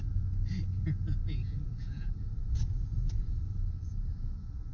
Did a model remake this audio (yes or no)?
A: yes